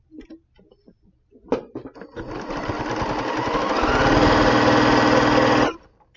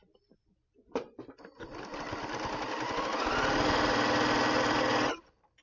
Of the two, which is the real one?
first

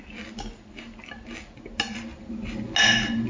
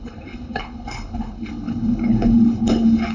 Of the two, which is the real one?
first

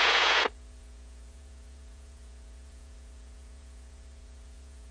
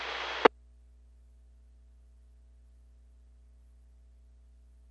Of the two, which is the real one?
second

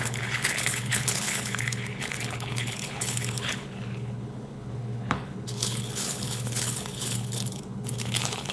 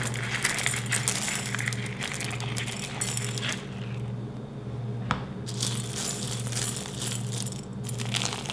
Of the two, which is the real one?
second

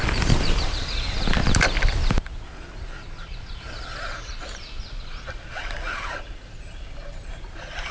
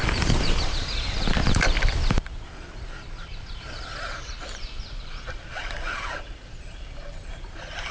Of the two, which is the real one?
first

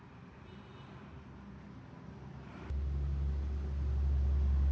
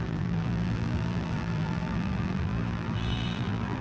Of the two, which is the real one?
first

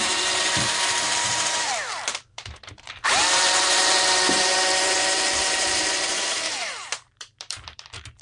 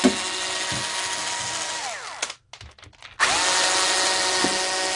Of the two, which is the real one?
second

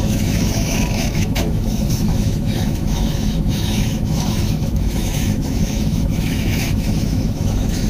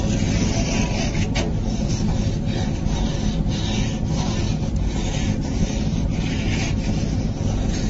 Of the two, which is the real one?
second